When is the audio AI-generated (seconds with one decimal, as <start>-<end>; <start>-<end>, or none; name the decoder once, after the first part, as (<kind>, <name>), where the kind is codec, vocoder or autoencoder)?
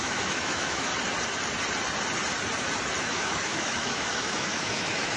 0.0-0.9 (autoencoder, DAC-VAE); 3.0-5.2